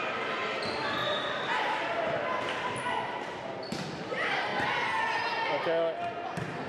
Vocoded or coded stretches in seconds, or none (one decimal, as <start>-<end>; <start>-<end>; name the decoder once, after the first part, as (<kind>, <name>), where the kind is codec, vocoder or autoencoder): none